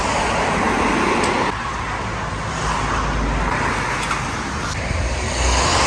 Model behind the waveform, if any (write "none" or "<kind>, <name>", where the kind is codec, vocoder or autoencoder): none